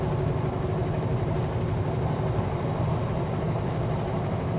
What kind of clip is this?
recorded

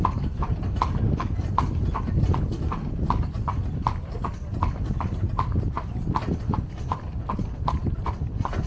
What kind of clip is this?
recorded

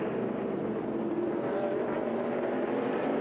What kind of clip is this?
recorded